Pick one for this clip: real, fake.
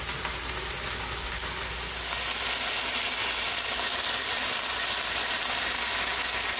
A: real